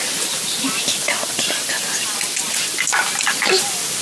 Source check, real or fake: real